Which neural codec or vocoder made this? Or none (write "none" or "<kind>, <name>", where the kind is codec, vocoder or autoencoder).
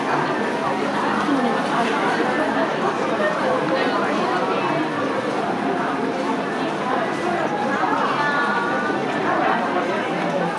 none